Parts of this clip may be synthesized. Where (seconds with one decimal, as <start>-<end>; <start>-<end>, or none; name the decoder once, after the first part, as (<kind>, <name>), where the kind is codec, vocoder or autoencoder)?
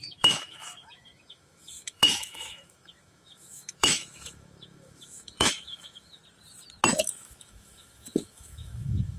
0.0-6.2 (autoencoder, DAC-VAE); 6.9-9.2